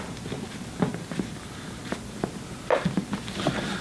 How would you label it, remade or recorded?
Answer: recorded